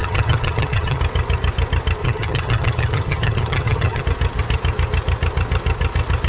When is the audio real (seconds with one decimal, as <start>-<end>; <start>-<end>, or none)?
1.0-2.0; 4.0-6.3